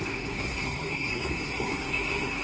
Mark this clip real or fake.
fake